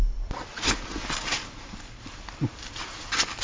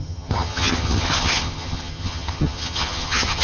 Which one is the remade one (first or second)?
second